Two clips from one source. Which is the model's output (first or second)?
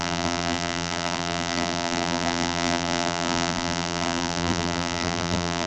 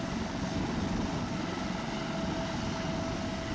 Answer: first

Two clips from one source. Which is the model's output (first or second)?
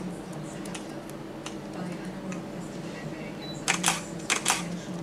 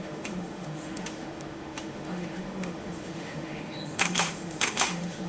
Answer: second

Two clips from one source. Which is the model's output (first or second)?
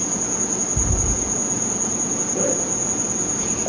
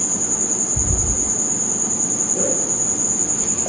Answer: first